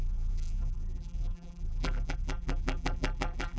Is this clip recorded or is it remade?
remade